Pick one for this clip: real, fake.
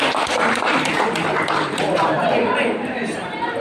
fake